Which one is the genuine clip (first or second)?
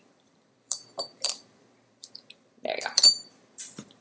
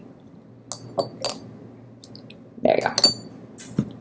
second